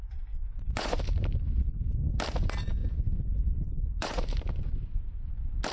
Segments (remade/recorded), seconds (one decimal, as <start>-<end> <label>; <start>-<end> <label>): 0.0-0.4 recorded; 0.4-1.0 remade; 1.0-2.8 recorded; 2.8-4.2 remade; 4.2-5.7 recorded

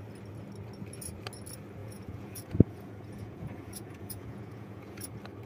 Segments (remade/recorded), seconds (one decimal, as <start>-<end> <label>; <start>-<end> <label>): 0.0-1.8 recorded; 1.8-5.1 remade; 5.1-5.5 recorded

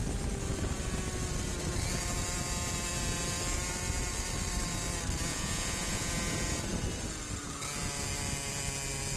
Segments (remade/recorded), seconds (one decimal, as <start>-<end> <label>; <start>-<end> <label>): 0.0-5.3 recorded; 5.3-6.1 remade; 6.1-9.2 recorded

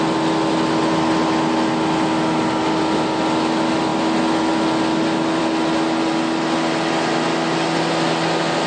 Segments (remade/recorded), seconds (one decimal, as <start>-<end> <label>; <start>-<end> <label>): 0.0-8.7 recorded